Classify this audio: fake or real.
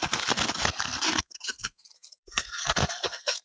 fake